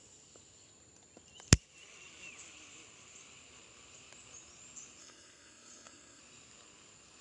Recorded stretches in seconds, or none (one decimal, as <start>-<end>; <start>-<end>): 0.0-5.0; 6.2-7.2